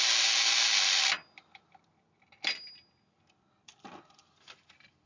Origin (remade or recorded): recorded